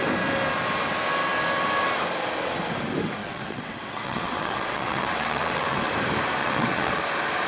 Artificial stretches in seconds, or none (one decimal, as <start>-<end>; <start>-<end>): 3.2-5.9; 6.4-7.0